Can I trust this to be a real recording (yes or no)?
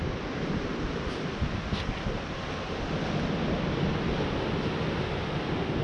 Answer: yes